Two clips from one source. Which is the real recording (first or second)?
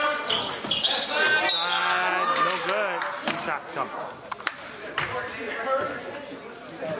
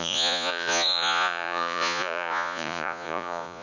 first